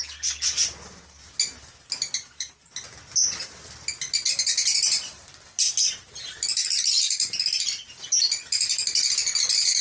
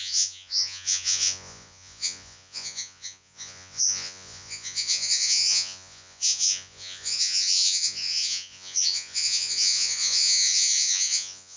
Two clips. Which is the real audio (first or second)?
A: first